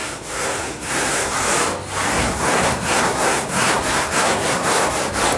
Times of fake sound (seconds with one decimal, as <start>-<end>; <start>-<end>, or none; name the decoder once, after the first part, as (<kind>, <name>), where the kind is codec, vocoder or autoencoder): 0.0-1.3 (codec, SNAC); 2.1-5.0